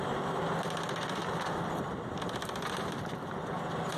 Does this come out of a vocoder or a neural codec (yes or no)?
no